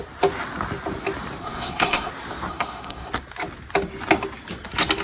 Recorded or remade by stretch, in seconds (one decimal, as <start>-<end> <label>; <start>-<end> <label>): 0.0-1.4 recorded; 1.4-2.1 remade; 2.1-2.5 recorded; 2.5-3.1 remade; 3.1-5.0 recorded